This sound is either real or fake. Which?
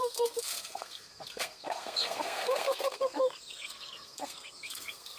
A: fake